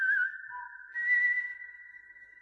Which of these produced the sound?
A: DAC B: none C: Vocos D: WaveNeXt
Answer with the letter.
B